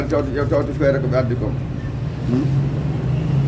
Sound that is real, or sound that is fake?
real